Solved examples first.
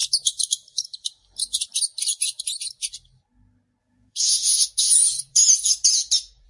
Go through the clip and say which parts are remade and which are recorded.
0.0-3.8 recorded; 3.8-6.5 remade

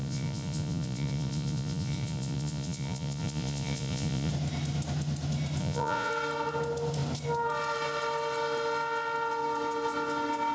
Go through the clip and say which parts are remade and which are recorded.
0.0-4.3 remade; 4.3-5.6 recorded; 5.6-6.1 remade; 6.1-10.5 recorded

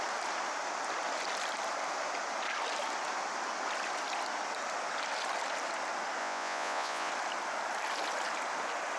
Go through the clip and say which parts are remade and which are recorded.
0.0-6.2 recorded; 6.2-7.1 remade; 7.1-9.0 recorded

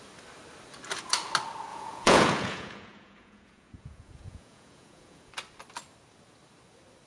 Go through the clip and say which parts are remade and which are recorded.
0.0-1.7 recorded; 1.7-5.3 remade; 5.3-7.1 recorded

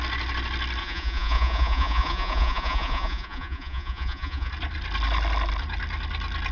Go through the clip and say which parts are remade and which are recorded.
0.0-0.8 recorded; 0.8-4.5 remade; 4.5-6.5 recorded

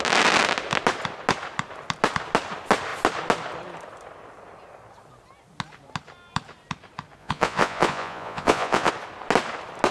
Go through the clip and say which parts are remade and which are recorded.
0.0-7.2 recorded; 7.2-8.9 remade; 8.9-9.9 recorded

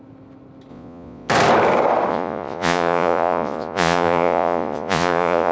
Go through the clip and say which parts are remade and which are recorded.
0.0-0.7 recorded; 0.7-1.3 remade; 1.3-2.1 recorded; 2.1-5.5 remade

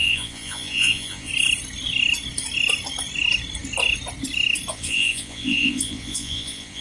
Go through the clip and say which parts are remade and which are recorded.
0.0-1.3 remade; 1.3-4.7 recorded; 4.7-6.8 remade